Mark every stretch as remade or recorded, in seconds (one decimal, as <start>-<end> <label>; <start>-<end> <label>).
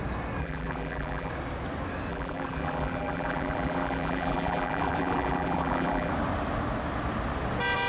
0.0-0.4 recorded; 0.4-1.3 remade; 1.3-2.1 recorded; 2.1-6.1 remade; 6.1-7.9 recorded